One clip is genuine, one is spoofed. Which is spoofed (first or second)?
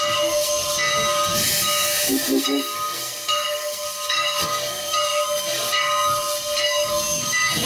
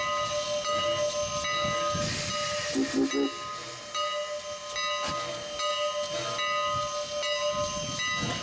first